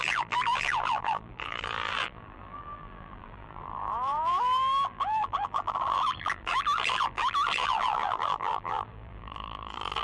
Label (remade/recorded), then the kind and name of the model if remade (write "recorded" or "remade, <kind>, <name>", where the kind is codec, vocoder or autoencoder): remade, vocoder, BigVGAN v2